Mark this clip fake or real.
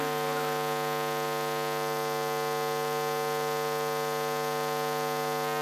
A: real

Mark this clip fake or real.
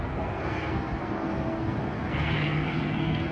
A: fake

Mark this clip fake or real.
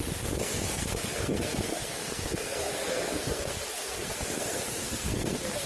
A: fake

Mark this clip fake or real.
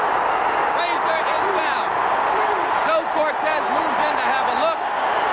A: real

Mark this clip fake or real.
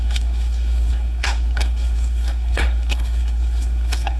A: fake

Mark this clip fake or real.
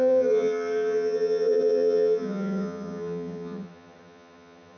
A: fake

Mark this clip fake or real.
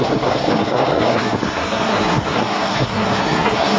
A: fake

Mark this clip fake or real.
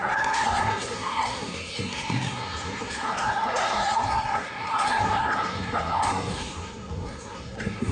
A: fake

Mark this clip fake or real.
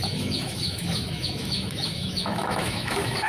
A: fake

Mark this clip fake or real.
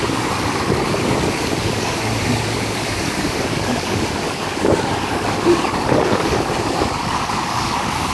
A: fake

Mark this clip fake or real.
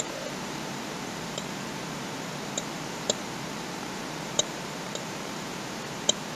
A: fake